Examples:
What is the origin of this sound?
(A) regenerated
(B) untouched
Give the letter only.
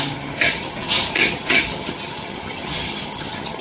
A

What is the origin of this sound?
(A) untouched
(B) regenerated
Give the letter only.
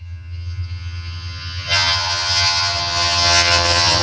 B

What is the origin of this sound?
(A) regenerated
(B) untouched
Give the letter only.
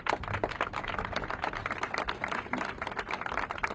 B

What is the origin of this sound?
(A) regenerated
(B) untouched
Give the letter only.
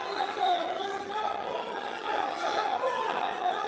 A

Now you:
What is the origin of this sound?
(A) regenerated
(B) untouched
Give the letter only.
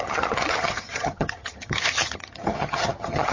A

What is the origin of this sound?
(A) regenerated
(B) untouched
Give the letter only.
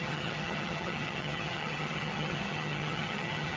A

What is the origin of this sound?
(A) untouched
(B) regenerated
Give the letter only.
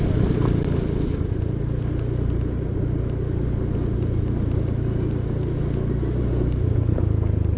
A